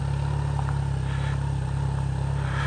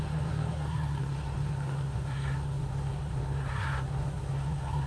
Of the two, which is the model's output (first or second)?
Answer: second